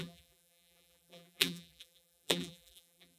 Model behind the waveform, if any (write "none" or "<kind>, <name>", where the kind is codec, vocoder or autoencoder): vocoder, BigVGAN v2